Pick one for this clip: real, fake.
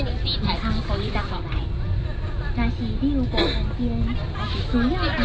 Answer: real